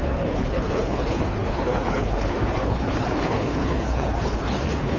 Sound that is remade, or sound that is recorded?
remade